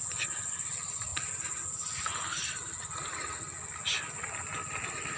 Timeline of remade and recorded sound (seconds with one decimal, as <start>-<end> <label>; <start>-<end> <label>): 0.0-5.2 recorded